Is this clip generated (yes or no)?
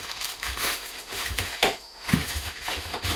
yes